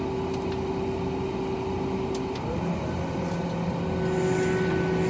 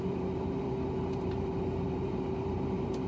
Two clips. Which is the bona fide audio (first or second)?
first